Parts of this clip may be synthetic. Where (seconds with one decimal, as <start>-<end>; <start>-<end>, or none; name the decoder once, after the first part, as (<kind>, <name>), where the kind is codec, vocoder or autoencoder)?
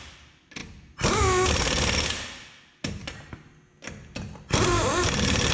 none